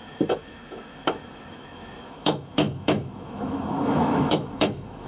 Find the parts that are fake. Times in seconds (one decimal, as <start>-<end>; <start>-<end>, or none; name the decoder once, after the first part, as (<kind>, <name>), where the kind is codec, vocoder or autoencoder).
0.0-5.1 (autoencoder, DAC-VAE)